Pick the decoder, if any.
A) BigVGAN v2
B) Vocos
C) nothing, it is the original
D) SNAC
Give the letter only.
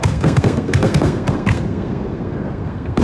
D